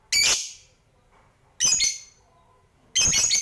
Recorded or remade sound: recorded